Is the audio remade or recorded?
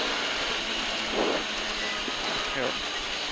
recorded